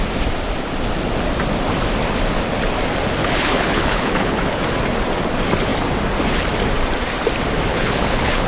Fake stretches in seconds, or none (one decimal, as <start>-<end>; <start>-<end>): 3.2-4.6; 7.7-8.5